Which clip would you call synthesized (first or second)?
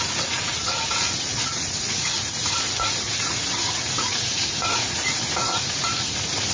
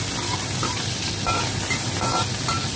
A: first